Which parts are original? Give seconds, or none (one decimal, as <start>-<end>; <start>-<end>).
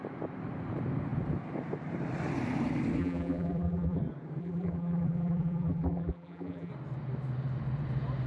0.0-3.0; 4.0-4.4; 6.7-8.3